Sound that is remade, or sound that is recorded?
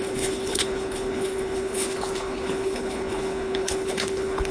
remade